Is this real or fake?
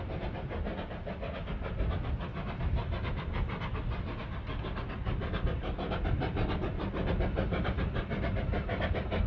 real